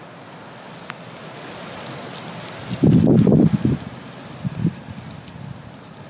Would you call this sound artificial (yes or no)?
no